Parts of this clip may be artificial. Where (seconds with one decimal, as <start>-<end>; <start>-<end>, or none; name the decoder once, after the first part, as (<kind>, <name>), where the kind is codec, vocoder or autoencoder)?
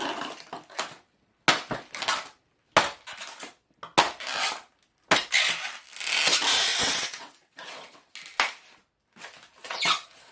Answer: 6.7-8.1 (vocoder, WaveNeXt); 9.6-10.3